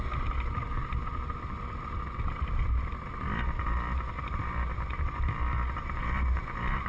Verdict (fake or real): real